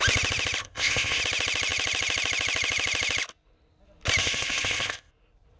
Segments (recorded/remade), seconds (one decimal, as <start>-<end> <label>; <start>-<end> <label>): 0.0-0.6 recorded; 0.6-1.2 remade; 1.2-4.2 recorded; 4.2-5.1 remade; 5.1-5.6 recorded

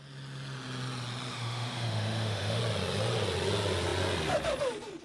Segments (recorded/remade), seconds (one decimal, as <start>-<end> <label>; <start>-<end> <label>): 0.0-1.3 recorded; 1.3-2.6 remade; 2.6-5.0 recorded

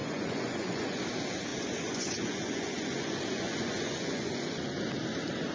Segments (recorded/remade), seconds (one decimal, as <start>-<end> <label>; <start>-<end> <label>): 0.0-1.0 remade; 1.0-1.5 recorded; 1.5-4.8 remade; 4.8-5.5 recorded

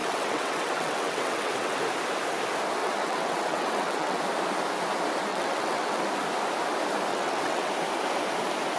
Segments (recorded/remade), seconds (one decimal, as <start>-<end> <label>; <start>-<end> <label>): 0.0-1.8 remade; 1.8-2.8 recorded; 2.8-4.2 remade; 4.2-5.3 recorded; 5.3-6.0 remade; 6.0-7.1 recorded; 7.1-7.7 remade; 7.7-8.8 recorded

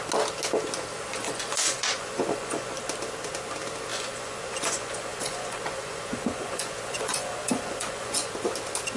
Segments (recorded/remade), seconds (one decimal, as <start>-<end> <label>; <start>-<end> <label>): 0.0-1.1 recorded; 1.1-2.8 remade; 2.8-3.9 recorded; 3.9-8.3 remade; 8.3-9.0 recorded

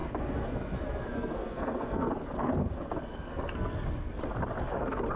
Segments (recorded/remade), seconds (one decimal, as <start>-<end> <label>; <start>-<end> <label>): 0.0-2.1 remade; 2.1-2.6 recorded; 2.6-4.2 remade; 4.2-5.2 recorded

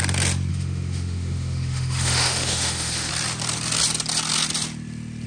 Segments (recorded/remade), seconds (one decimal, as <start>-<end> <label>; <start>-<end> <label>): 0.0-0.5 recorded; 0.5-3.1 remade; 3.1-5.3 recorded

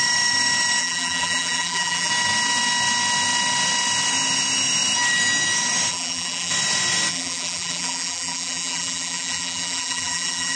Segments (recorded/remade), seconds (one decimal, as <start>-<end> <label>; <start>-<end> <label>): 0.0-0.8 recorded; 0.8-2.1 remade; 2.1-5.9 recorded; 5.9-6.5 remade; 6.5-7.1 recorded; 7.1-10.6 remade